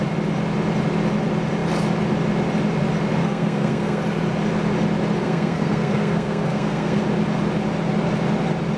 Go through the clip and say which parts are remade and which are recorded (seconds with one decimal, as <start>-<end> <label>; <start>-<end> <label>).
0.0-3.2 recorded; 3.2-4.0 remade; 4.0-5.2 recorded; 5.2-7.0 remade; 7.0-8.8 recorded